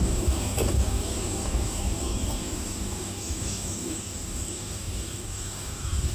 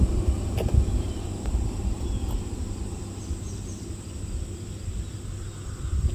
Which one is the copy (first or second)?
first